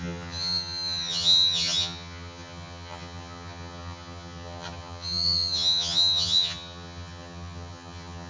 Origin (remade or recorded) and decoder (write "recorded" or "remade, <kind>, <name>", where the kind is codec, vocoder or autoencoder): remade, vocoder, HiFi-GAN